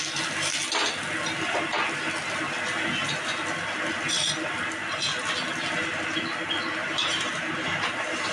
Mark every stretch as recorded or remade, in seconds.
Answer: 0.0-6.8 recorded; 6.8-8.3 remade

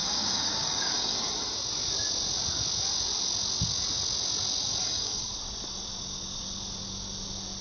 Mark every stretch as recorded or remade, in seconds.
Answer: 0.0-1.3 remade; 1.3-4.8 recorded; 4.8-5.3 remade; 5.3-7.6 recorded

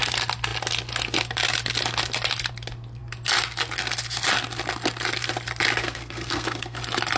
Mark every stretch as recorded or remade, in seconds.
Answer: 0.0-5.8 recorded; 5.8-6.8 remade; 6.8-7.2 recorded

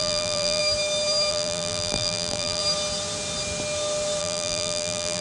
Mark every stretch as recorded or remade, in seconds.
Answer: 0.0-0.6 remade; 0.6-1.3 recorded; 1.3-2.6 remade; 2.6-4.2 recorded; 4.2-5.2 remade

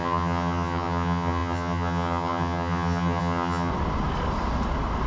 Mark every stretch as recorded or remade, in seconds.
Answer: 0.0-3.7 remade; 3.7-5.1 recorded